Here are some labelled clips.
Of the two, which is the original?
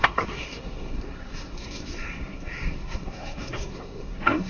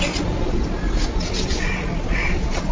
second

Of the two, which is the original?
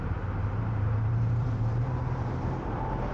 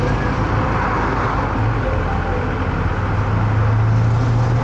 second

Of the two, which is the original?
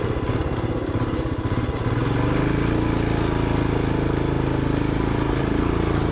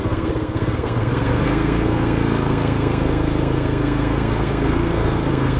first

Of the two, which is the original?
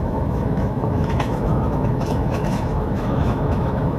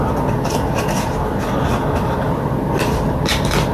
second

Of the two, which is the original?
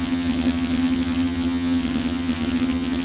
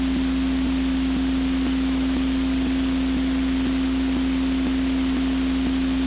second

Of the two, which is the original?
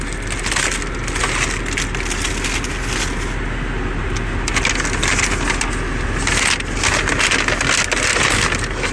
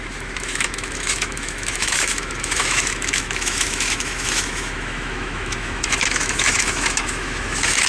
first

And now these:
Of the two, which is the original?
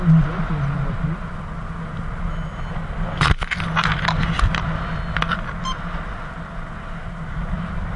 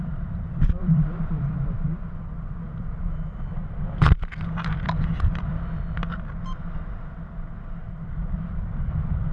first